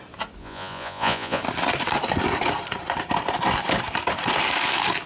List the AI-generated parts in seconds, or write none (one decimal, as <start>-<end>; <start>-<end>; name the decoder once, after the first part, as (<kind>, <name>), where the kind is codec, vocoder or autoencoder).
0.4-1.4 (vocoder, Vocos)